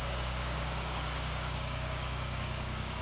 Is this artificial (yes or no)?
yes